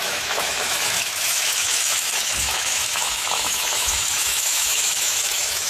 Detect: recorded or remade remade